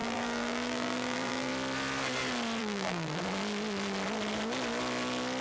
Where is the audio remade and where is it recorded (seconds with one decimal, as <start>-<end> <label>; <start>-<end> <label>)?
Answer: 0.0-1.5 remade; 1.5-2.6 recorded; 2.6-3.2 remade; 3.2-5.4 recorded